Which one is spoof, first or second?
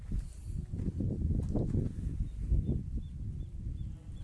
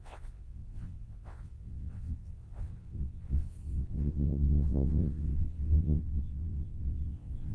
second